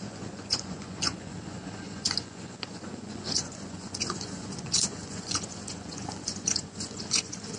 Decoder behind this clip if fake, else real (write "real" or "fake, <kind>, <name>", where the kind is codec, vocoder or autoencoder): fake, vocoder, Vocos